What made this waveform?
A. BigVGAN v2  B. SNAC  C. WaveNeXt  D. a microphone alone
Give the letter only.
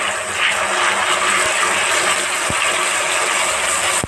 D